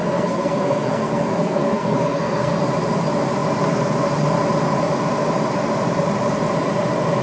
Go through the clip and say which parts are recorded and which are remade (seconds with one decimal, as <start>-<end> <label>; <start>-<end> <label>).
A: 0.0-2.6 remade; 2.6-7.2 recorded